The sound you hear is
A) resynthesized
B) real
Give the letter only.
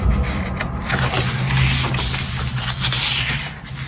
B